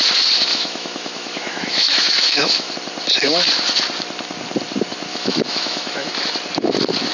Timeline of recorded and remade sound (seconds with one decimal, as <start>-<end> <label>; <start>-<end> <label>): 0.0-0.5 recorded; 0.5-2.7 remade; 2.7-5.1 recorded; 5.1-6.2 remade; 6.2-7.1 recorded

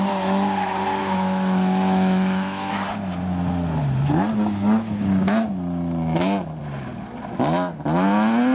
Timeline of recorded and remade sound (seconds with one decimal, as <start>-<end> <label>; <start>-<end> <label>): 0.0-1.0 recorded; 1.0-2.7 remade; 2.7-8.5 recorded

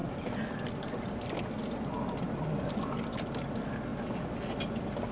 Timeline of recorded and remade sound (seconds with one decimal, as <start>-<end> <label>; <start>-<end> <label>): 0.0-5.1 recorded

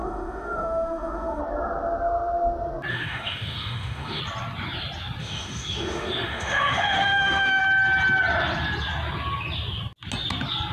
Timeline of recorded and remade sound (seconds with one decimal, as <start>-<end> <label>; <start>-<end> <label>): 0.0-1.4 remade; 1.4-2.9 recorded; 2.9-4.2 remade; 4.2-5.2 recorded; 5.2-7.6 remade; 7.6-10.7 recorded

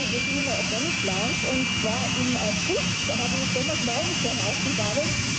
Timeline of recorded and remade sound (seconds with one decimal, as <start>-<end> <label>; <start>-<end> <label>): 0.0-0.4 recorded; 0.4-1.3 remade; 1.3-2.0 recorded; 2.0-5.4 remade

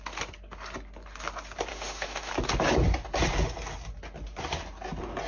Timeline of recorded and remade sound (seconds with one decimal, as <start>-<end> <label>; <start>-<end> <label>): 0.0-1.7 recorded; 1.7-2.3 remade; 2.3-5.3 recorded

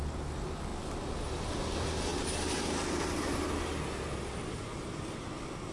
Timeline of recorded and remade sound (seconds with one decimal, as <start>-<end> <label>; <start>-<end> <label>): 0.0-5.7 recorded

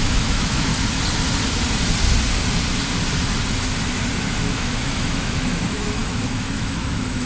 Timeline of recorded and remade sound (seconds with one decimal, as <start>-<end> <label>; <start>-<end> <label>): 0.0-0.7 remade; 0.7-4.2 recorded; 4.2-7.3 remade